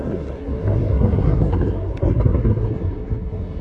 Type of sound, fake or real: fake